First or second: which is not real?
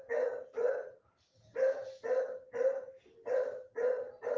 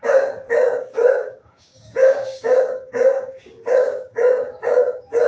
second